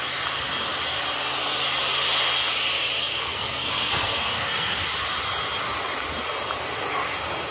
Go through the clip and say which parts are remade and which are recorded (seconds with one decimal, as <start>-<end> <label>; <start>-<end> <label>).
0.0-3.0 recorded; 3.0-4.8 remade; 4.8-7.5 recorded